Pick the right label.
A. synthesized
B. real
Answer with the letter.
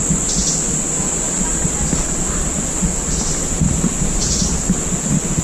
B